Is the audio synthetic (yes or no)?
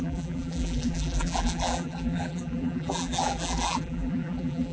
yes